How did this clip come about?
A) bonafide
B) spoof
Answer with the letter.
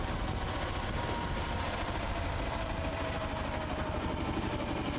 A